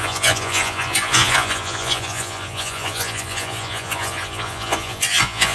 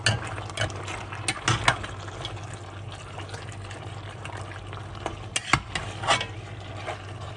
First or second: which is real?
second